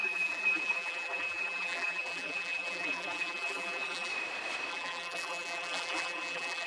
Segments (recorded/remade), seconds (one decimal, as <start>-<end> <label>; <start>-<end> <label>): 0.0-4.1 remade; 4.1-4.7 recorded; 4.7-6.7 remade

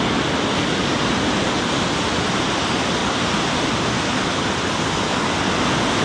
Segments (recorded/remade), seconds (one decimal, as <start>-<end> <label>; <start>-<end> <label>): 0.0-6.0 recorded

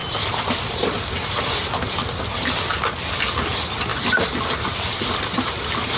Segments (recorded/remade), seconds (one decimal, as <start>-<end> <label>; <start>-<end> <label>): 0.0-6.0 recorded

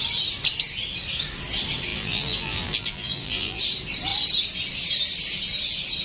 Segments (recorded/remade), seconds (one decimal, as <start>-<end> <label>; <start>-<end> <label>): 0.0-1.9 recorded; 1.9-3.6 remade; 3.6-6.0 recorded

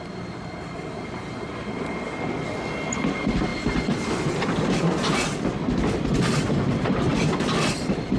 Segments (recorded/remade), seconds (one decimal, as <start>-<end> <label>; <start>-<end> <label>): 0.0-8.2 recorded